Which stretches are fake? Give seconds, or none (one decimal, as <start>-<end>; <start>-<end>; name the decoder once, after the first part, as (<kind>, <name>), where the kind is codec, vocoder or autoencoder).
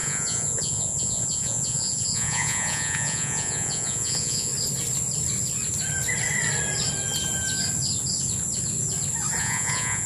0.0-4.5 (vocoder, Vocos); 9.4-10.1